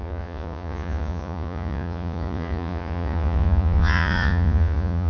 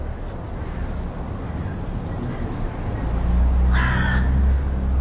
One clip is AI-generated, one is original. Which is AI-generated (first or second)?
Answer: first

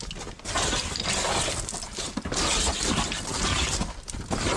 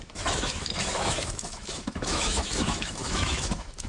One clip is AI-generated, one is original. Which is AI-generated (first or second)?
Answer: second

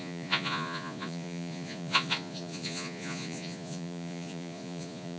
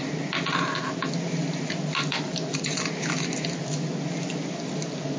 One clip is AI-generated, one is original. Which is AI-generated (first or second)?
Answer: first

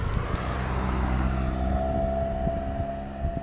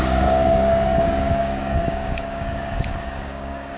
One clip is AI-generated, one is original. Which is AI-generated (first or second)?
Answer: second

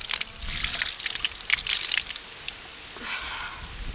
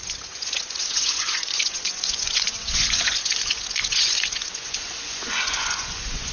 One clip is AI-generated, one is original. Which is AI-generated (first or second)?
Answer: second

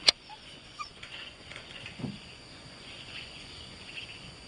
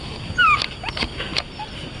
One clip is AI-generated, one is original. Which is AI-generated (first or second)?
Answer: first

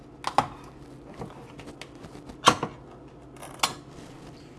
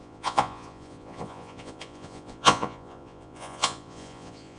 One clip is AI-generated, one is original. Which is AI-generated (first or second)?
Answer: second